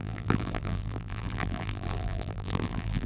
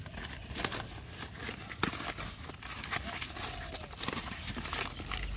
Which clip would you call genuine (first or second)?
second